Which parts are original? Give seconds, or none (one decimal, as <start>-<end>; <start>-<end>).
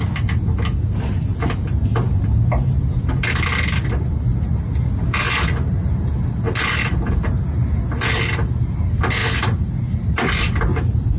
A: 0.0-11.2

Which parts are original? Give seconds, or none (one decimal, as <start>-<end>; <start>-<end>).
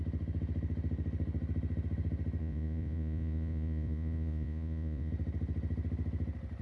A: 0.0-2.4; 5.1-6.6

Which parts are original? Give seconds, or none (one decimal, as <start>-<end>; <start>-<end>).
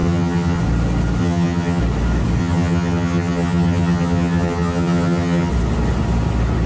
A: 0.6-1.2; 1.8-2.4; 5.5-6.7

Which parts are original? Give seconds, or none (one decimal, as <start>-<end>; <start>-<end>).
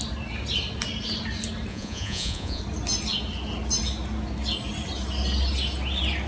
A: 0.0-1.7; 2.6-6.3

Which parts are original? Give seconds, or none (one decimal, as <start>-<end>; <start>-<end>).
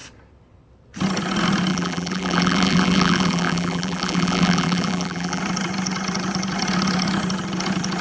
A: 0.0-1.7; 5.4-8.0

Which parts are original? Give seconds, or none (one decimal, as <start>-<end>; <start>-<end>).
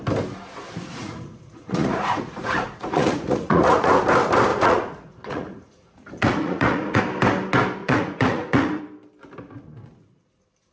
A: 0.0-0.9; 3.9-4.5; 7.0-7.8; 8.8-10.7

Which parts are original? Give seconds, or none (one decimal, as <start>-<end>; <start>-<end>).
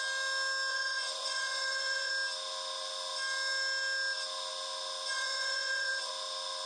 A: 0.0-0.7; 2.1-5.1; 6.1-6.7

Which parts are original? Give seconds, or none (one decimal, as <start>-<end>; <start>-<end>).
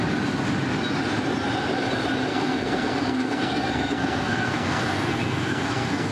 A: 0.0-2.3